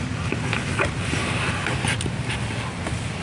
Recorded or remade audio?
recorded